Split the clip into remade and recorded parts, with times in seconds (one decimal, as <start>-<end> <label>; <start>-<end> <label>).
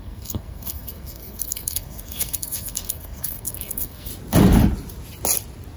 0.0-4.1 remade; 4.1-5.8 recorded